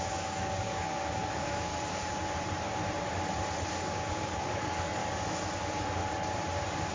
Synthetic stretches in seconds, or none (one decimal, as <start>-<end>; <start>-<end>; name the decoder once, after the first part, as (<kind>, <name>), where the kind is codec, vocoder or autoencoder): 0.0-1.7 (codec, DAC); 3.7-5.0; 5.6-6.0